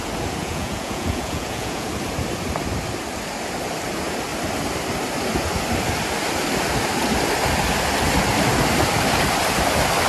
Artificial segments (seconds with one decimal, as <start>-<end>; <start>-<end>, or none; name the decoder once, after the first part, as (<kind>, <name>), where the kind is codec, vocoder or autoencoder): 0.4-1.9 (vocoder, Vocos)